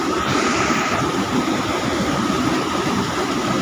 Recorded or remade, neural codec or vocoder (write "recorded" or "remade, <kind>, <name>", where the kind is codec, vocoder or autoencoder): remade, vocoder, BigVGAN v2